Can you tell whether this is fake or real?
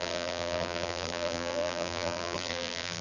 fake